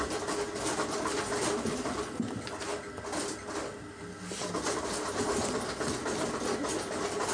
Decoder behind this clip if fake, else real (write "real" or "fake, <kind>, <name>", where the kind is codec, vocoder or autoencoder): real